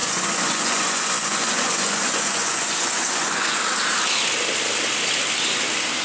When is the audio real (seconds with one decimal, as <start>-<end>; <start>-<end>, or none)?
3.6-6.0